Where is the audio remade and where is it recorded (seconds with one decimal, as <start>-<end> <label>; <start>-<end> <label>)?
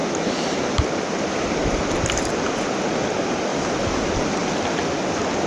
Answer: 0.0-2.3 remade; 2.3-3.5 recorded; 3.5-4.0 remade; 4.0-5.5 recorded